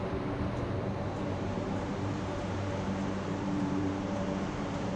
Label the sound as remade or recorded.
remade